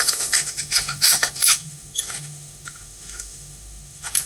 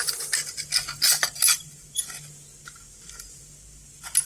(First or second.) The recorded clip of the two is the second